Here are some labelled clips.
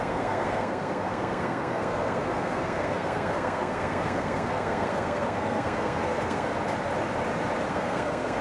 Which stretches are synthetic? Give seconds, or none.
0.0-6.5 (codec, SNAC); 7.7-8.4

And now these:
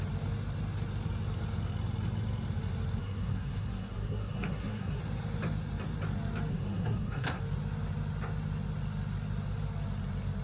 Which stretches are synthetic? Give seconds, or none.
3.0-5.0 (codec, SNAC); 6.5-7.4

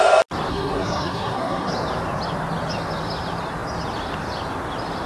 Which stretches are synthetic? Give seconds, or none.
0.5-1.7 (codec, SNAC)

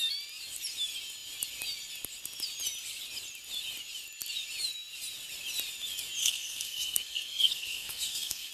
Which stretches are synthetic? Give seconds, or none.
6.2-8.5 (codec, SNAC)

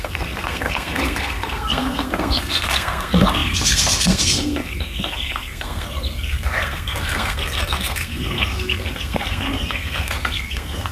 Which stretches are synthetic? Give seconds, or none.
0.0-10.9 (codec, SNAC)

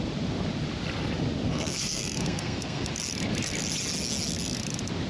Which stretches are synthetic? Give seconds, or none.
1.5-2.9 (codec, SNAC)